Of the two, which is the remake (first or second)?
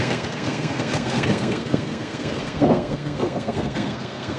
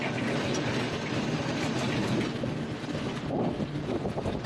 first